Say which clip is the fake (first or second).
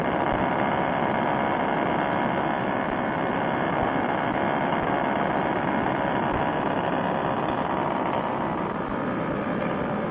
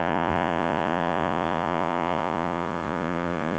second